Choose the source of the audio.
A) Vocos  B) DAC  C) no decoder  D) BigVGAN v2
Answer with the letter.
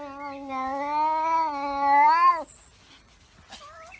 C